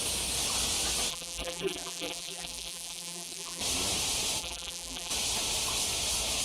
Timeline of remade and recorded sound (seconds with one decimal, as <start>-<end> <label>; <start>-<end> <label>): 0.0-1.1 recorded; 1.1-3.6 remade; 3.6-4.4 recorded; 4.4-5.1 remade; 5.1-6.4 recorded